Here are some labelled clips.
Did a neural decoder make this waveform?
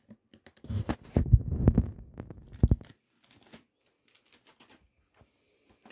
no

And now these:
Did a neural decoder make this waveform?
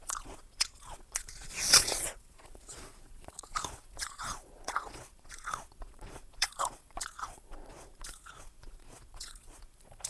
yes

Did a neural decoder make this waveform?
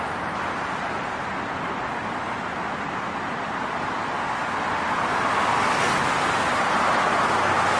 no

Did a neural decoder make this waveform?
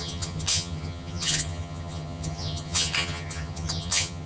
yes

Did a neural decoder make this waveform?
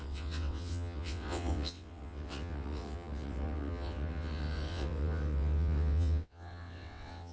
yes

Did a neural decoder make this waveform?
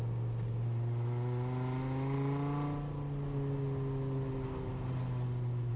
no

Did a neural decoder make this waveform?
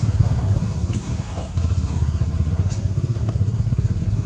yes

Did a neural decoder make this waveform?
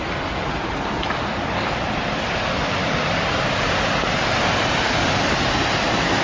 no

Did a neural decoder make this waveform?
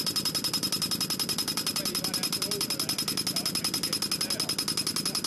no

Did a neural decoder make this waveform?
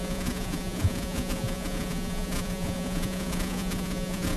yes